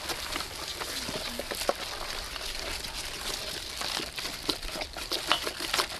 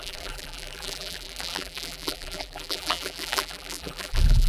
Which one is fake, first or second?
second